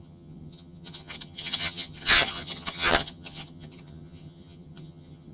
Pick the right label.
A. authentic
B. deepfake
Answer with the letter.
B